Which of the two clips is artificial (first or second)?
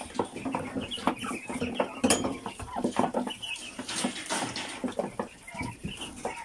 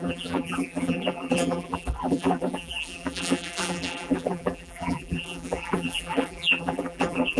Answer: second